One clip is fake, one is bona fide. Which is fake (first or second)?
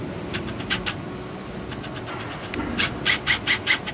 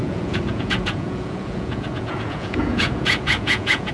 second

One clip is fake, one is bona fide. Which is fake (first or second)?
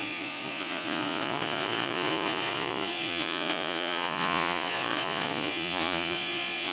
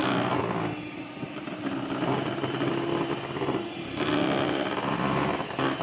first